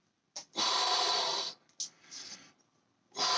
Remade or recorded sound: recorded